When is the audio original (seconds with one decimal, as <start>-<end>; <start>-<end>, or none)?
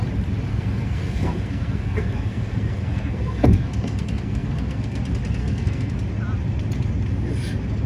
0.0-0.5; 5.0-5.4; 5.9-7.9